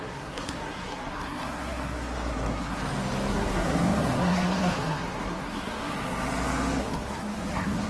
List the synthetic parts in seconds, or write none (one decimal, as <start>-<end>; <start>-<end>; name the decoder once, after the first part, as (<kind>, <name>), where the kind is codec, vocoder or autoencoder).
0.0-2.8 (codec, SNAC); 3.3-5.9; 6.8-7.9